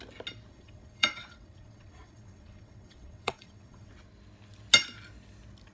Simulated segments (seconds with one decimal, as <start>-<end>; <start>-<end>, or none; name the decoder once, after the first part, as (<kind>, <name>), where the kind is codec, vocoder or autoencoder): 0.5-3.9 (vocoder, WaveNeXt)